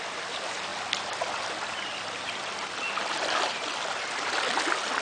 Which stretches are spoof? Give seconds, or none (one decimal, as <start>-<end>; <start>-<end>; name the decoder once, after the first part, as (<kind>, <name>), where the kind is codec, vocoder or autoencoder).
none